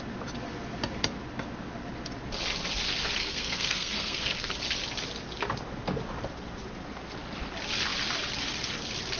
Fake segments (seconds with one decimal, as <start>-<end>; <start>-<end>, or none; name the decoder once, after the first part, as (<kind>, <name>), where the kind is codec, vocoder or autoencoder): 3.2-4.5 (codec, SNAC)